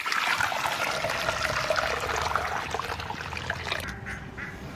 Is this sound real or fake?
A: real